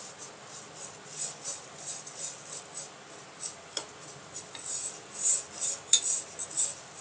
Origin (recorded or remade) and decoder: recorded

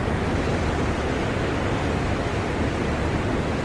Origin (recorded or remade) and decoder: recorded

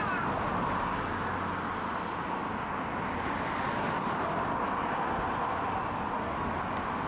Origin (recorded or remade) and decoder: recorded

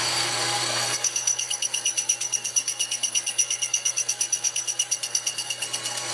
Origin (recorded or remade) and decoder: remade, codec, SNAC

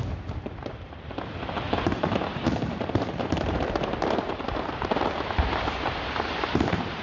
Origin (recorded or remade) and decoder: remade, vocoder, BigVGAN v2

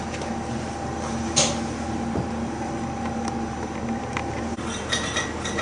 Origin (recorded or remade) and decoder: recorded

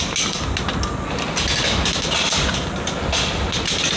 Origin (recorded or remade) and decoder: recorded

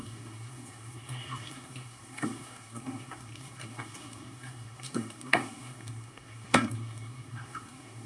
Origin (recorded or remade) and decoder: remade, codec, SNAC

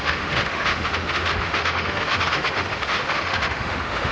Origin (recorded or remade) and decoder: remade, autoencoder, DAC-VAE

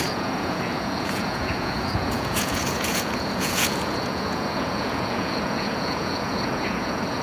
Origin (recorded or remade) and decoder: remade, vocoder, Vocos